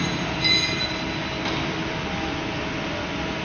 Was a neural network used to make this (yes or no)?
no